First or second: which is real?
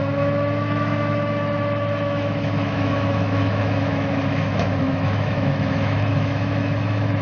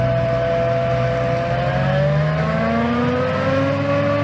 second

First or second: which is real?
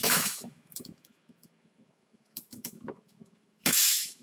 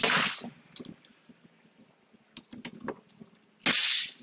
second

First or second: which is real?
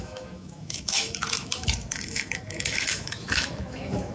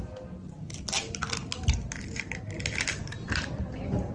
second